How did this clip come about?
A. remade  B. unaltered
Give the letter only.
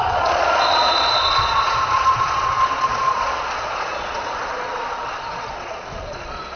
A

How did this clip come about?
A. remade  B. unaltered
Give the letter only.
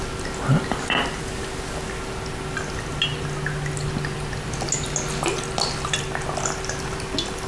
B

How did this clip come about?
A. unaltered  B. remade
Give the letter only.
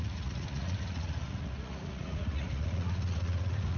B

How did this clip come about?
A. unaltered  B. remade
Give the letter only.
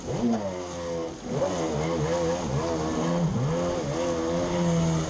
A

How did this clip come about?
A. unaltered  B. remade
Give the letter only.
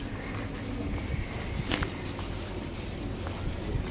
A